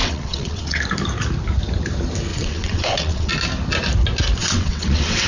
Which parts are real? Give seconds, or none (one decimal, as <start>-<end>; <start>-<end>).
0.8-2.3; 3.3-4.4